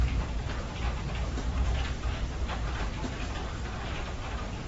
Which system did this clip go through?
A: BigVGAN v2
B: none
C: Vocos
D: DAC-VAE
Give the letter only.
A